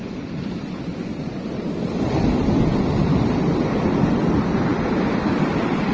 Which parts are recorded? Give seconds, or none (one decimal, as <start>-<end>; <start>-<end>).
0.0-5.9

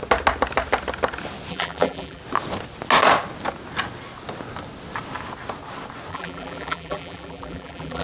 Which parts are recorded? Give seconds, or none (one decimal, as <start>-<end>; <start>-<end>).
0.0-1.5; 2.2-6.1

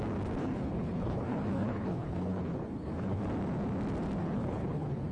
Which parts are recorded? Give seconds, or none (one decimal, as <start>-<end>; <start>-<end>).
0.0-0.4; 3.2-4.2

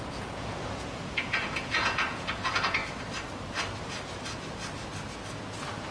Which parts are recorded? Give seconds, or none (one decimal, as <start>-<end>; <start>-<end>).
2.8-5.9